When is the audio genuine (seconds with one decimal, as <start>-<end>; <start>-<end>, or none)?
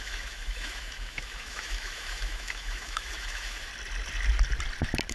3.7-5.1